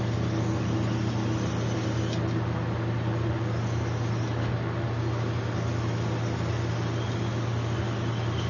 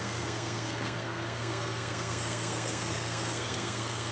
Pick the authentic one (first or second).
first